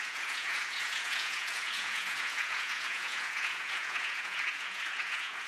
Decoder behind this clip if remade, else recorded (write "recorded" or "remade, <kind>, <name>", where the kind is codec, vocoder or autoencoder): remade, vocoder, Vocos